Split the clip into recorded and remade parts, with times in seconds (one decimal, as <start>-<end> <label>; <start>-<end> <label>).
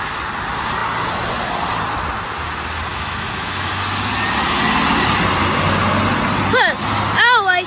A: 0.0-2.9 recorded; 2.9-3.7 remade; 3.7-7.7 recorded